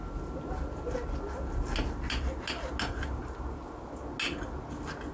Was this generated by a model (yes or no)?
no